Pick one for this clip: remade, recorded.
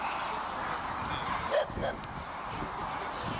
recorded